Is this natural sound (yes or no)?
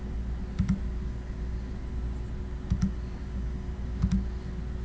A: yes